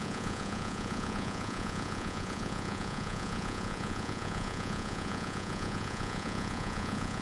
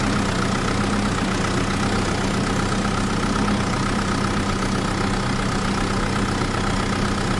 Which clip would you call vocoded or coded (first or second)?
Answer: first